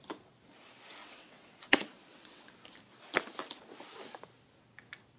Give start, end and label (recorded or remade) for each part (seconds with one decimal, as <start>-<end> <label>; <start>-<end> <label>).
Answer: 0.0-1.0 recorded; 1.0-2.5 remade; 2.5-5.2 recorded